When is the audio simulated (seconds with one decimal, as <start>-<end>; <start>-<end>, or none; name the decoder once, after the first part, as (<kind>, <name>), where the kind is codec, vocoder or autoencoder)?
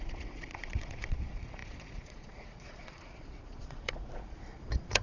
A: 0.0-5.0 (vocoder, Vocos)